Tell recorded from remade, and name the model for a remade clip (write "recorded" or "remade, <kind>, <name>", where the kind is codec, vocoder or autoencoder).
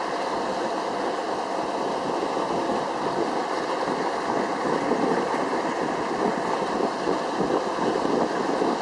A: recorded